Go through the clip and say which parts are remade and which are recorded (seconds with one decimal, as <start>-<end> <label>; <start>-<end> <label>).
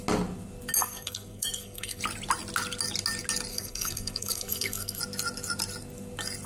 0.0-0.8 recorded; 0.8-2.0 remade; 2.0-3.5 recorded; 3.5-5.0 remade; 5.0-6.5 recorded